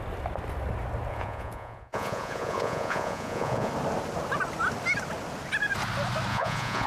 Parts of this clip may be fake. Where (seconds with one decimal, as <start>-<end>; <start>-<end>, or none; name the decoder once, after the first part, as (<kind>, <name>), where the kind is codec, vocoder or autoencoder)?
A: 1.1-3.7 (vocoder, Vocos); 6.3-6.9